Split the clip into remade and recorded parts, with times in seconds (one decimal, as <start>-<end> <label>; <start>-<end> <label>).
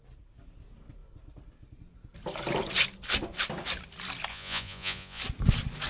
0.0-4.3 recorded; 4.3-5.2 remade; 5.2-5.9 recorded